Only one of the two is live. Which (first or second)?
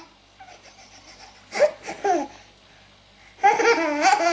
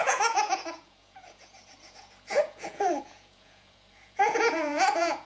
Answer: first